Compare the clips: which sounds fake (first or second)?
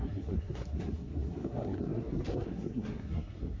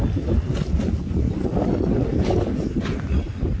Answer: first